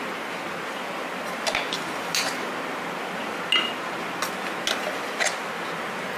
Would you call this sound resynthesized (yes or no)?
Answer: no